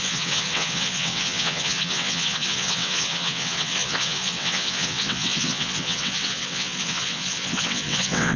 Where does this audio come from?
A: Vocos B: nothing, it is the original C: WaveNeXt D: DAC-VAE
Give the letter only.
C